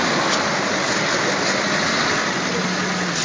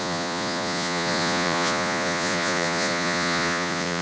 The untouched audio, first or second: first